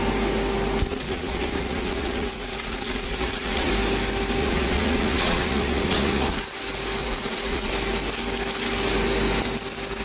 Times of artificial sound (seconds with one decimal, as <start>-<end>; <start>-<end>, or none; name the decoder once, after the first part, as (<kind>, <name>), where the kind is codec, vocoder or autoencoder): 0.9-3.7 (vocoder, Vocos); 4.4-6.4; 7.0-7.7